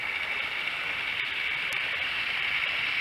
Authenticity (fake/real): real